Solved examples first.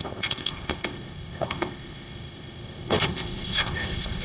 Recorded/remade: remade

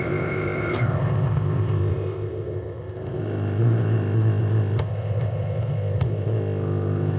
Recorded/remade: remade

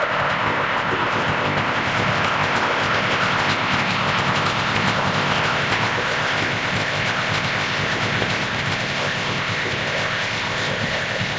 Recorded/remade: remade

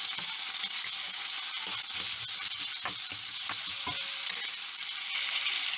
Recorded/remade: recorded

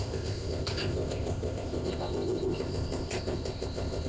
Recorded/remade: remade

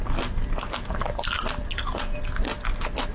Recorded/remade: recorded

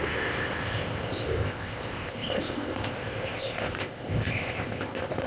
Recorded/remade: remade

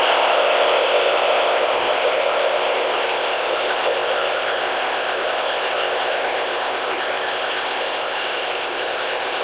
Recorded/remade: remade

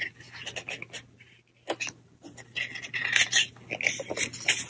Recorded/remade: recorded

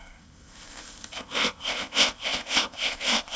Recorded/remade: remade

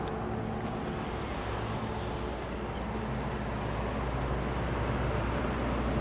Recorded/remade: recorded